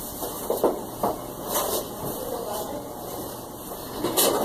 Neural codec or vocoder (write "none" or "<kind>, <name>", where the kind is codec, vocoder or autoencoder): none